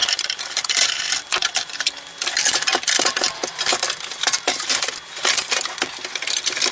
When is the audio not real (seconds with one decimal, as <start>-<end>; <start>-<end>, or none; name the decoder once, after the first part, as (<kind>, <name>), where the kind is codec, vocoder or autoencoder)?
none